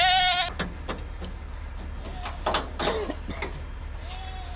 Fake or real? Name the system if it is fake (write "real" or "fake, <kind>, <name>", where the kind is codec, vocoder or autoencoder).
real